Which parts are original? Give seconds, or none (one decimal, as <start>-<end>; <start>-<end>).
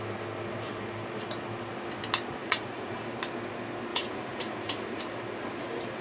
0.0-2.4; 3.0-3.9; 5.0-6.0